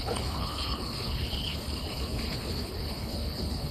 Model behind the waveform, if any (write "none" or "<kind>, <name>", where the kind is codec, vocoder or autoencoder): codec, HILCodec